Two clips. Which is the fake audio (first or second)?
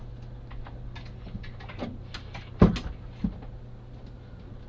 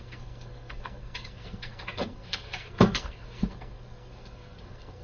second